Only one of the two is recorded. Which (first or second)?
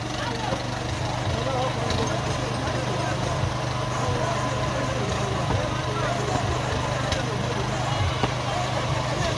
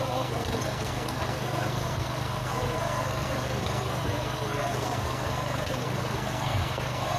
first